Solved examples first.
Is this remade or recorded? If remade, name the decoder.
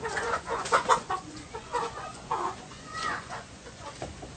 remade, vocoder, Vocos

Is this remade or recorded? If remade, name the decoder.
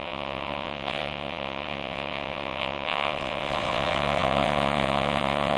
remade, vocoder, WaveNeXt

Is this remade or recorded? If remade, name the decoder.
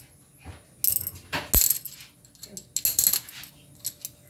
recorded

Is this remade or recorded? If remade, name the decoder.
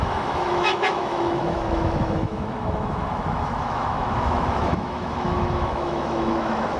remade, autoencoder, DAC-VAE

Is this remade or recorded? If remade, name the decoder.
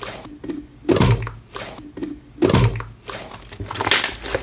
recorded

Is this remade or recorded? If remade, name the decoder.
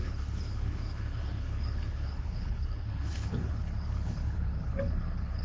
remade, codec, HILCodec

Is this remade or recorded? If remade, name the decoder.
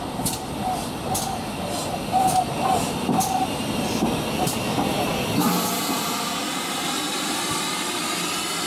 recorded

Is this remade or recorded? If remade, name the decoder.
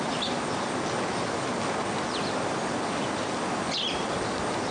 recorded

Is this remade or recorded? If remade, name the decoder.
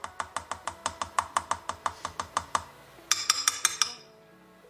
recorded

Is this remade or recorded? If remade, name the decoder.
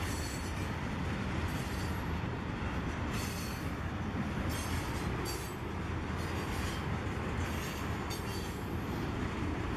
recorded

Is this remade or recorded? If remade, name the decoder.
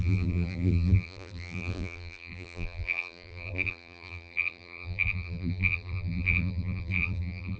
remade, vocoder, BigVGAN v2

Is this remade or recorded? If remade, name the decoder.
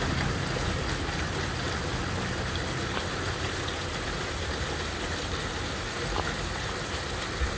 recorded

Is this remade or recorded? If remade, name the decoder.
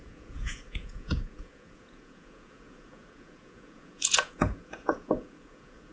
remade, vocoder, Vocos